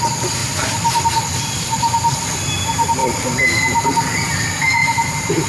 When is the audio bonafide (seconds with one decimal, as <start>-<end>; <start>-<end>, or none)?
0.0-0.4; 1.7-3.0; 3.6-5.5

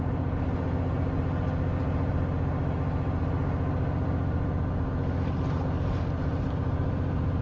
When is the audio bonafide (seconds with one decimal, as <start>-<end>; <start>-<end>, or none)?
0.0-7.4

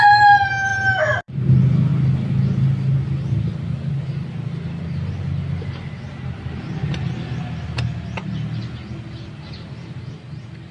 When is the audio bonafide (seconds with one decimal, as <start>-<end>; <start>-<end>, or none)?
0.0-0.7; 1.5-10.7

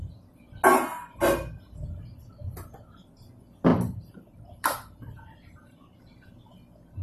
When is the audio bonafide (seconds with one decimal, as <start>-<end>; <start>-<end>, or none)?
0.0-3.7; 6.0-7.0

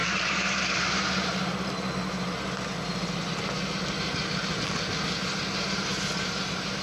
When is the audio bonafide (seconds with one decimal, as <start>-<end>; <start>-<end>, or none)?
1.5-5.0

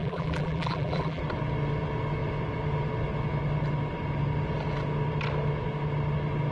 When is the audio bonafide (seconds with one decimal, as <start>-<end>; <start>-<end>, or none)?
1.2-6.5